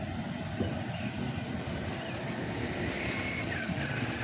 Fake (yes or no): no